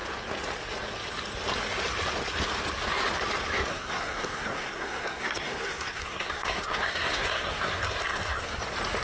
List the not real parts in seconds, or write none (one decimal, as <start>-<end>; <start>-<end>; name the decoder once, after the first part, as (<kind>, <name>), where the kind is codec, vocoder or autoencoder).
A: 3.7-8.6 (codec, SNAC)